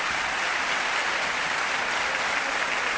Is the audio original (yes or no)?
yes